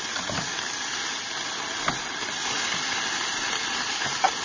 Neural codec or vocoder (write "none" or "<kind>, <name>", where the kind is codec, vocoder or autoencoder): vocoder, BigVGAN v2